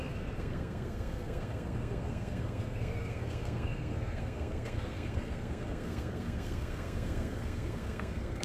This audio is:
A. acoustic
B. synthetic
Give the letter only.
B